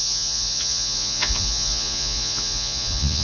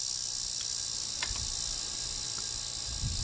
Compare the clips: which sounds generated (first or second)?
first